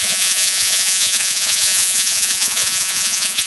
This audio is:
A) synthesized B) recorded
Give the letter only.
A